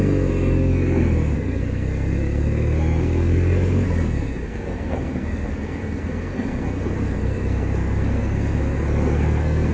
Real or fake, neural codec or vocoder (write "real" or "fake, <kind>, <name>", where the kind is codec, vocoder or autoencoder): fake, codec, SNAC